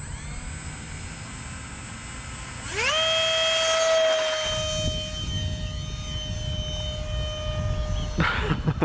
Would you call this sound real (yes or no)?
yes